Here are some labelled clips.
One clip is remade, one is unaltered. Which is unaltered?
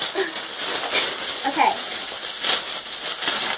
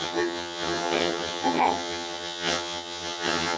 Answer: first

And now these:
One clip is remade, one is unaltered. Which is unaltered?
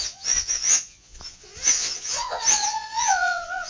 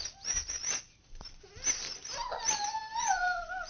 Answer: second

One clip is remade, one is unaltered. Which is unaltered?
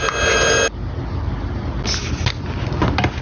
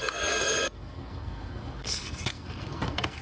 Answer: first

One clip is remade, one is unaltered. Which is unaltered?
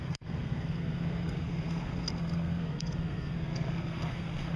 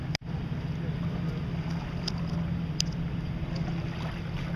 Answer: second